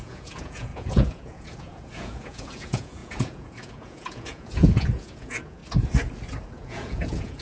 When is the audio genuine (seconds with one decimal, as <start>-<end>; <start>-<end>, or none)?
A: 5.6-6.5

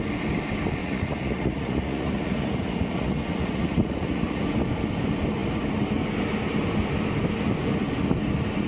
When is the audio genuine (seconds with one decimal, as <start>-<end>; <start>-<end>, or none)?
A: 0.0-0.8; 4.4-8.7

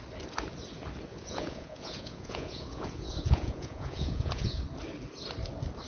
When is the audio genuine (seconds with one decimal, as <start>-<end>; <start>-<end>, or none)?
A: 0.0-1.1; 4.6-5.9